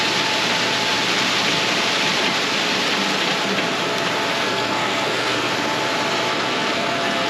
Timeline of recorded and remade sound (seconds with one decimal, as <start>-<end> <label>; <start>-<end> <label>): 0.0-4.3 recorded; 4.3-5.5 remade; 5.5-6.3 recorded; 6.3-7.3 remade